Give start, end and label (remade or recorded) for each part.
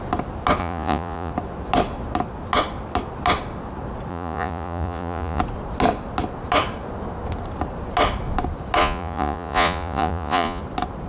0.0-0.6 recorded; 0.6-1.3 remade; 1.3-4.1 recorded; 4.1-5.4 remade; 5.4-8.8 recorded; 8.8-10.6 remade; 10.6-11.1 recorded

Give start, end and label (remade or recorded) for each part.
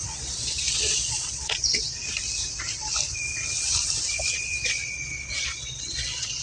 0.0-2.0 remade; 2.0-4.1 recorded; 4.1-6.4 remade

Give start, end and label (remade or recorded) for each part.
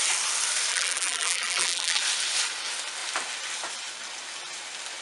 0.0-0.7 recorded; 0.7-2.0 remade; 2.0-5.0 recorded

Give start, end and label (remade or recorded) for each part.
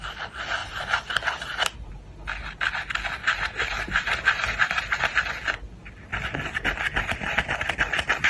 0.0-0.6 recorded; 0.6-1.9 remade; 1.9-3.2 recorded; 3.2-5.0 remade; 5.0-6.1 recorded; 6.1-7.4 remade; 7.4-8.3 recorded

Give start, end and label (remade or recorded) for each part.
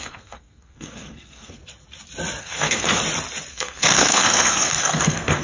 0.0-1.6 remade; 1.6-2.4 recorded; 2.4-3.0 remade; 3.0-3.5 recorded; 3.5-5.4 remade